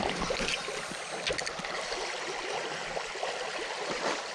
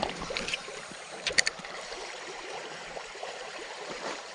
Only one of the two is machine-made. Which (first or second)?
second